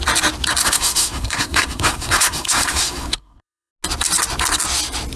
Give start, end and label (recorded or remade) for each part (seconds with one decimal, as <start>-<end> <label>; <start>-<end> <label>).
0.0-0.6 recorded; 0.6-3.7 remade; 3.7-5.2 recorded